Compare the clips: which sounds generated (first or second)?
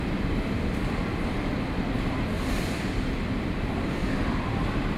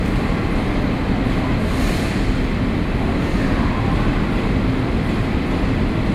first